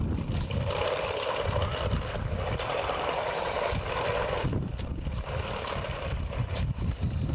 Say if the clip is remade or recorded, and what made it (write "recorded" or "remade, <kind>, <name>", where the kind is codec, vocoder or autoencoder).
remade, vocoder, BigVGAN v2